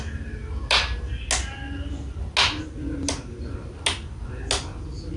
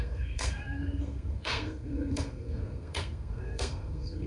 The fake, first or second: second